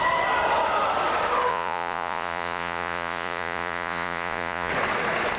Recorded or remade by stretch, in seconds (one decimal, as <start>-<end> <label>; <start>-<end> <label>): 0.0-1.5 recorded; 1.5-4.7 remade; 4.7-5.4 recorded

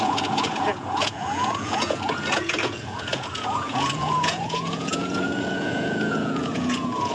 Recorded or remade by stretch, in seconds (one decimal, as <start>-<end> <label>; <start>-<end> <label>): 0.0-7.1 remade

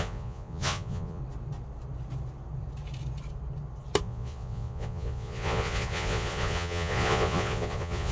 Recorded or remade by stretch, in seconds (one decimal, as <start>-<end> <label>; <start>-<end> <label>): 0.0-1.2 remade; 1.2-4.0 recorded; 4.0-8.1 remade

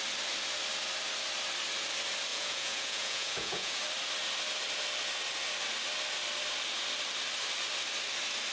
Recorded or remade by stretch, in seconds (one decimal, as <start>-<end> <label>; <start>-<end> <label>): 0.0-2.3 recorded; 2.3-3.8 remade; 3.8-8.5 recorded

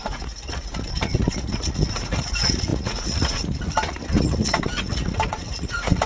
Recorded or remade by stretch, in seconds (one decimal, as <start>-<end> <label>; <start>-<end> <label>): 0.0-6.1 remade

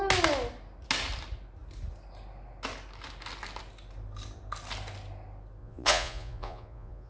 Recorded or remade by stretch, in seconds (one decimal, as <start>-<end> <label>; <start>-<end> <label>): 0.0-5.6 recorded; 5.6-7.1 remade

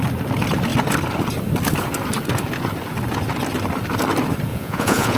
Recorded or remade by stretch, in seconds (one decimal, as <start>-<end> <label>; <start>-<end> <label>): 0.0-4.5 recorded; 4.5-5.2 remade

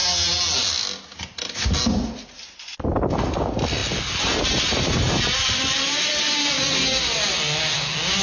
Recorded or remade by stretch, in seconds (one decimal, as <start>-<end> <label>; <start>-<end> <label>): 0.0-8.2 recorded